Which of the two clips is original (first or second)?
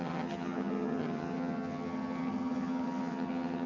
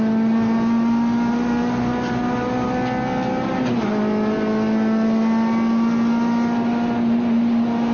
second